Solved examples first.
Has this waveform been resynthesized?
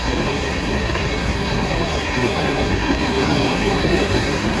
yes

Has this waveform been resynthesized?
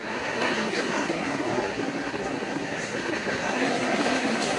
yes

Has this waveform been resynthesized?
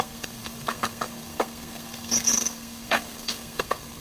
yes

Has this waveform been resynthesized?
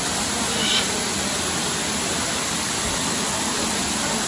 no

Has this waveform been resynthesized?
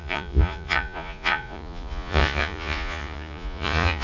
yes